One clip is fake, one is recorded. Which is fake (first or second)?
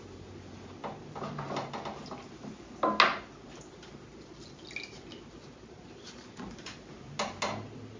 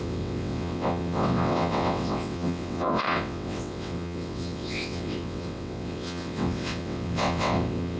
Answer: second